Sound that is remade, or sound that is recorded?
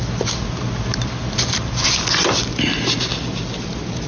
recorded